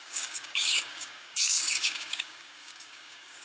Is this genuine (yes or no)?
no